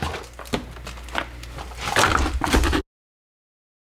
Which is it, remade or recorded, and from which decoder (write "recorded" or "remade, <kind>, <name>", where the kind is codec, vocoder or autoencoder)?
recorded